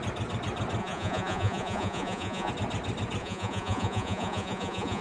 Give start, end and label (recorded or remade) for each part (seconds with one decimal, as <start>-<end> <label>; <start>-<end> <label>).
0.0-0.8 recorded; 0.8-2.5 remade; 2.5-3.2 recorded; 3.2-5.0 remade